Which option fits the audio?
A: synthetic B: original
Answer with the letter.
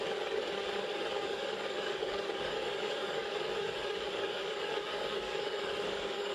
A